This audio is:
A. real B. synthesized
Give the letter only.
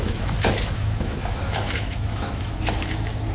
B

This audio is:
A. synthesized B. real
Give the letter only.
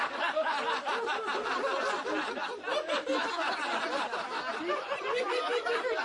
B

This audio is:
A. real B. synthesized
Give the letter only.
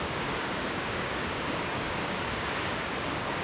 B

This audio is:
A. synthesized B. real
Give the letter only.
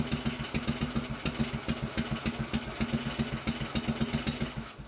B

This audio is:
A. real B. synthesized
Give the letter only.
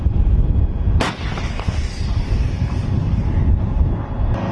A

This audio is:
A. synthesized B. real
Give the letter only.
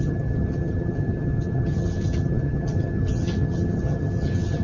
A